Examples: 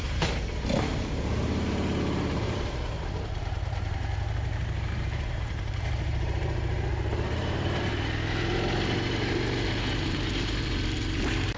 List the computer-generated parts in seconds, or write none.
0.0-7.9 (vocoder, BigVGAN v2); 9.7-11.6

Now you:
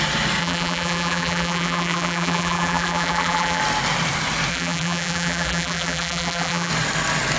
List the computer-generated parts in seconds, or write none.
0.4-3.6 (vocoder, BigVGAN v2); 4.5-6.7

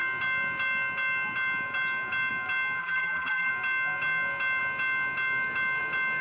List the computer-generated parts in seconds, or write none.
2.8-3.5 (vocoder, BigVGAN v2)

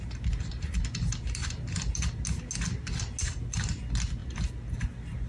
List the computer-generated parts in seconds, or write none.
1.4-1.9 (vocoder, BigVGAN v2); 3.2-3.8

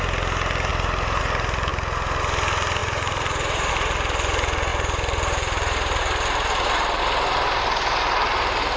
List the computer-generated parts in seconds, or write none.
0.7-1.2 (vocoder, BigVGAN v2); 2.8-3.7; 4.7-7.0

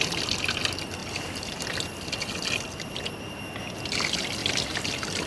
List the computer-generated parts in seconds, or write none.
4.4-5.3 (vocoder, BigVGAN v2)